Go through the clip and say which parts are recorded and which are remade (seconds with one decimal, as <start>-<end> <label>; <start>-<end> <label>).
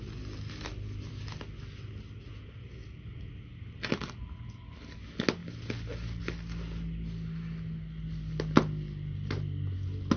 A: 0.0-10.2 recorded